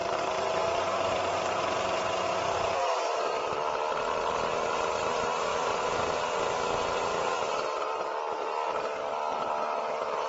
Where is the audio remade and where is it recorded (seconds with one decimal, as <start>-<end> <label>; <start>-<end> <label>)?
0.0-3.4 remade; 3.4-10.3 recorded

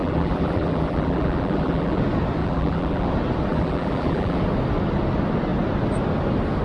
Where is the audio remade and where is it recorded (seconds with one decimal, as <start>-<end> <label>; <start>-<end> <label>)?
0.0-2.0 remade; 2.0-2.4 recorded; 2.4-3.1 remade; 3.1-3.5 recorded; 3.5-4.4 remade; 4.4-6.6 recorded

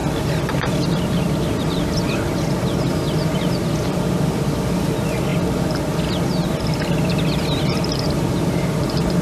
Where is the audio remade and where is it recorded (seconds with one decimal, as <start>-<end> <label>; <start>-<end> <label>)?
0.0-0.6 recorded; 0.6-5.3 remade; 5.3-6.9 recorded; 6.9-9.2 remade

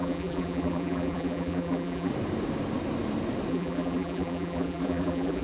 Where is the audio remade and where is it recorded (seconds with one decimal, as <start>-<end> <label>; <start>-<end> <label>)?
0.0-2.1 remade; 2.1-3.5 recorded; 3.5-5.4 remade

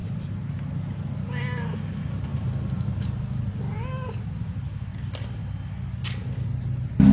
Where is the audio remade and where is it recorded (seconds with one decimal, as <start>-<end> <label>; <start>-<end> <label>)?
0.0-0.6 remade; 0.6-2.3 recorded; 2.3-3.2 remade; 3.2-7.1 recorded

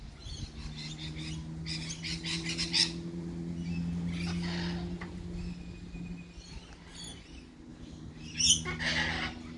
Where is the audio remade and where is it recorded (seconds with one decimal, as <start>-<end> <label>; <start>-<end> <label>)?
0.0-7.7 recorded; 7.7-8.5 remade; 8.5-9.6 recorded